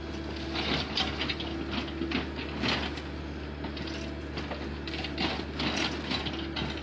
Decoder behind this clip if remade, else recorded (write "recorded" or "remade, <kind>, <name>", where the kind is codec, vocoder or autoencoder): recorded